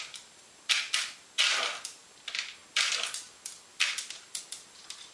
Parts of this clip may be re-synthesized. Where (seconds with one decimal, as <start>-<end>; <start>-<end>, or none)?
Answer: none